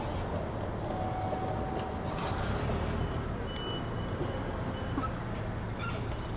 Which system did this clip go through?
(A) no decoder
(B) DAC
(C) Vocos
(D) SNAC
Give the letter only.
A